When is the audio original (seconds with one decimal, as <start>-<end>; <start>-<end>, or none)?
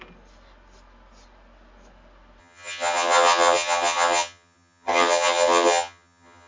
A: 0.0-2.4